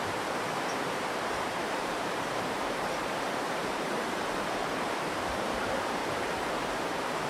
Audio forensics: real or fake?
fake